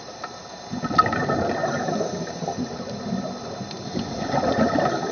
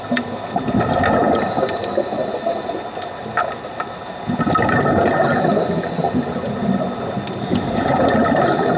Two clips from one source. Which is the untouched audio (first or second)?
second